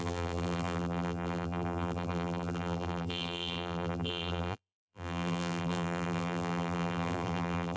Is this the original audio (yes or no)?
no